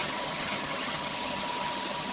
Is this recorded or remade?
remade